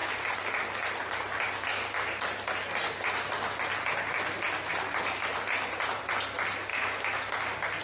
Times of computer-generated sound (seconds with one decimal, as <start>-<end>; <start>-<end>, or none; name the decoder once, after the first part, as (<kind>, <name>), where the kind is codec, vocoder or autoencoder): 6.7-7.3 (autoencoder, DAC-VAE)